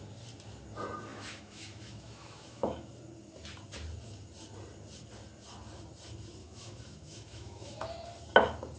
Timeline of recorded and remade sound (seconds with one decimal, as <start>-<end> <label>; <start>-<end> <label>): 0.0-1.1 recorded; 1.1-2.9 remade; 2.9-6.4 recorded; 6.4-7.8 remade; 7.8-8.8 recorded